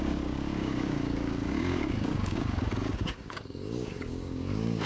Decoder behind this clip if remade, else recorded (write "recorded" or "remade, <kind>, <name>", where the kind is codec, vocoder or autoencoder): remade, codec, DAC